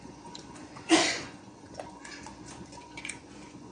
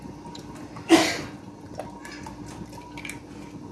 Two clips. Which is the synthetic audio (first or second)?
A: first